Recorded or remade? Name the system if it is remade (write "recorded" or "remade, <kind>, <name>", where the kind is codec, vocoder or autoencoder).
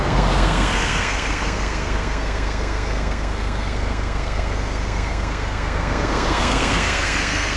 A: remade, codec, SNAC